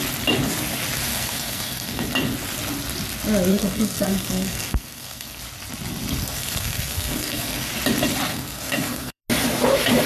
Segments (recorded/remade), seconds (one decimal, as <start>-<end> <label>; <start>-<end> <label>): 0.0-1.1 recorded; 1.1-2.0 remade; 2.0-3.5 recorded; 3.5-5.4 remade; 5.4-6.2 recorded; 6.2-7.7 remade; 7.7-8.3 recorded; 8.3-9.2 remade; 9.2-10.1 recorded